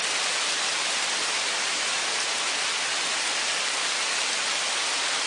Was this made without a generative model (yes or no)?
yes